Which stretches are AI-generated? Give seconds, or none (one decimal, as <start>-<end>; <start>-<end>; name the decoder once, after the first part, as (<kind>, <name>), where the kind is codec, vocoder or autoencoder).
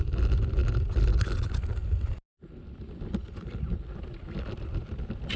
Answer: none